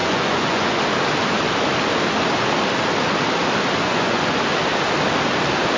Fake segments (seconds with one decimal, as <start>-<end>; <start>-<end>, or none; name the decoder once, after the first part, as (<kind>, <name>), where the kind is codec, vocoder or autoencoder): 0.0-0.8 (vocoder, Vocos); 3.8-4.4